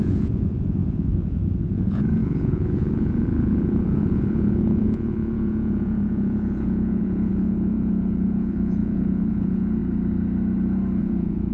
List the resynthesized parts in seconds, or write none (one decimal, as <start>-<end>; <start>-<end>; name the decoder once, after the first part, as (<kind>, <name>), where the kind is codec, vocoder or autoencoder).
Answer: 0.0-9.8 (vocoder, Vocos); 11.0-11.5